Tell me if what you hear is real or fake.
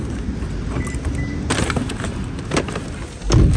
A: real